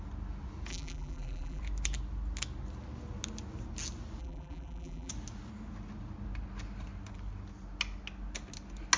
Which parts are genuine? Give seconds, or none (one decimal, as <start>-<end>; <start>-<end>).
0.0-0.7; 1.6-4.2; 5.1-9.0